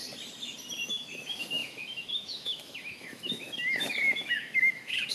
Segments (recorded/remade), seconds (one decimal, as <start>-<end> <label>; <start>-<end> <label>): 0.0-0.9 recorded; 0.9-5.1 remade